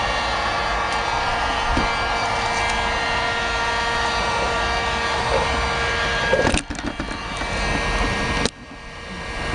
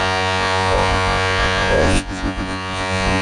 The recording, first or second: first